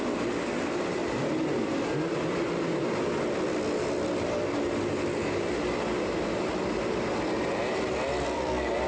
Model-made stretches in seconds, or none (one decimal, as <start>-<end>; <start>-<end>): none